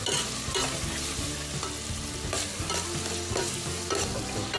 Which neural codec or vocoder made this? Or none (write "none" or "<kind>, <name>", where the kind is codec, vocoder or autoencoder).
none